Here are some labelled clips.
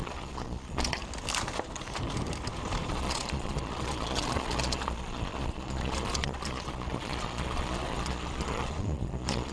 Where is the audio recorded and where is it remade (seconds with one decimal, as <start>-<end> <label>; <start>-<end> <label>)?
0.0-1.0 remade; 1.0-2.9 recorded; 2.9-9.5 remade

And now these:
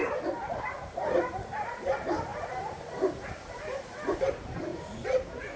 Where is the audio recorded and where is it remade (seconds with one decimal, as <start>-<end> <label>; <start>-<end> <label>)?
0.0-5.6 remade

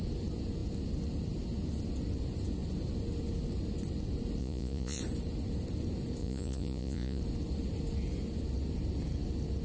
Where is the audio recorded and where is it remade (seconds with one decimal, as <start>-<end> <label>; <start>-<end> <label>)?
0.0-4.4 recorded; 4.4-5.0 remade; 5.0-6.2 recorded; 6.2-7.2 remade; 7.2-9.6 recorded